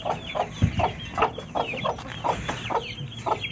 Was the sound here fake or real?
real